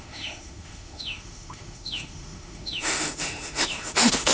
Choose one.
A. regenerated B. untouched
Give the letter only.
A